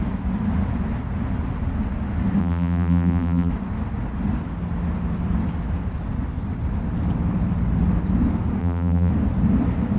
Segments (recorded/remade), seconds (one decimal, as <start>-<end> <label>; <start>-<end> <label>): 0.0-2.4 recorded; 2.4-3.5 remade; 3.5-8.6 recorded; 8.6-9.1 remade; 9.1-10.0 recorded